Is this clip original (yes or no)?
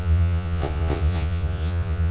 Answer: no